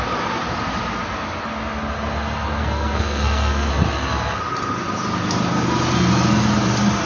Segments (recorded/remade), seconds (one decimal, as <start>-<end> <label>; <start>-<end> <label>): 0.0-2.6 recorded; 2.6-3.7 remade; 3.7-7.1 recorded